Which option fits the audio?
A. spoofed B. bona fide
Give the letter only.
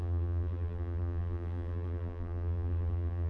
A